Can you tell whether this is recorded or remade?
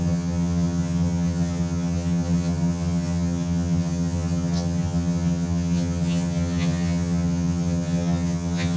remade